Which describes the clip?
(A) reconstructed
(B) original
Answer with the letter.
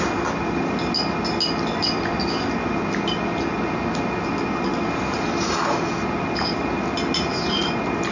B